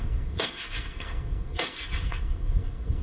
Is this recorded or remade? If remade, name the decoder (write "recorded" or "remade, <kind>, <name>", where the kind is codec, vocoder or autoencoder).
remade, codec, SNAC